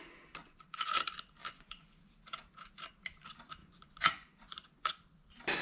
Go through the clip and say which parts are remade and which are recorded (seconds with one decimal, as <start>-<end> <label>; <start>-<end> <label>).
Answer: 0.0-0.4 recorded; 0.4-1.0 remade; 1.0-1.4 recorded; 1.4-2.0 remade; 2.0-3.6 recorded; 3.6-4.9 remade; 4.9-5.6 recorded